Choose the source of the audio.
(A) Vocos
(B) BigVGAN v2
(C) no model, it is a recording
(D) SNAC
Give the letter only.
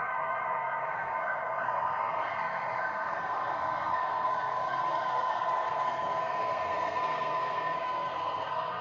D